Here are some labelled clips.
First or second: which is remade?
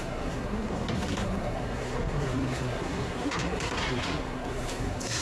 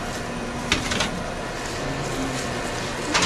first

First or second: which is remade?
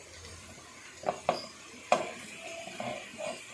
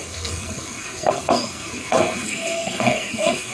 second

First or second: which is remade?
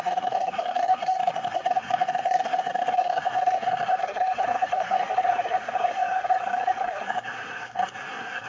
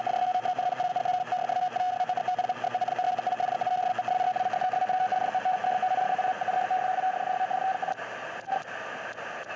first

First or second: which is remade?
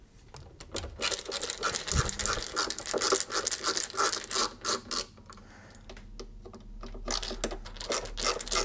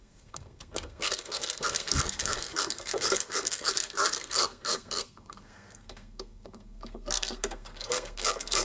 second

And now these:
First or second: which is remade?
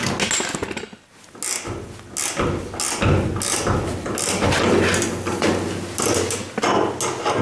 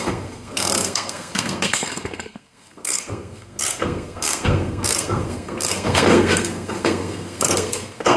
second